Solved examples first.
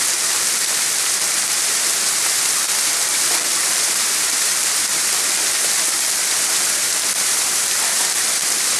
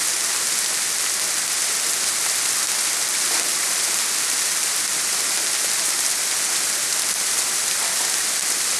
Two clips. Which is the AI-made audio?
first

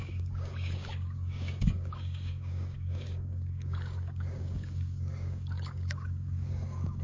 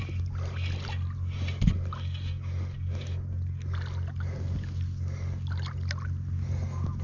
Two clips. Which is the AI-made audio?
first